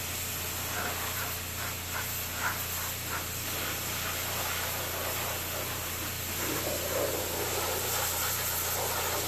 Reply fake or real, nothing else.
real